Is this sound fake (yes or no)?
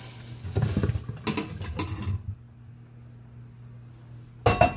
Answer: no